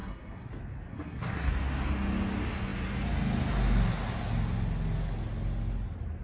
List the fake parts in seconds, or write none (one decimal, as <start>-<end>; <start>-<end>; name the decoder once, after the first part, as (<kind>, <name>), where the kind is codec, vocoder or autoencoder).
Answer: 0.0-0.5 (codec, SNAC); 0.9-1.5